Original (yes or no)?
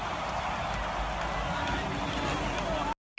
yes